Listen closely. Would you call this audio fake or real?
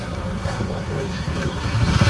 fake